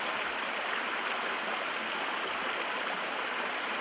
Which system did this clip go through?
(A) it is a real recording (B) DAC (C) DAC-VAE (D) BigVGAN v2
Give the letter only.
A